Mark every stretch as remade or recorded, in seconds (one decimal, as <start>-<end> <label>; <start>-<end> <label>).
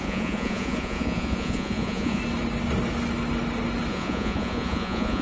0.0-2.2 remade; 2.2-3.9 recorded; 3.9-5.2 remade